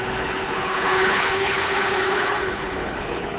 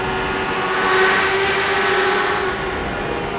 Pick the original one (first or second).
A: second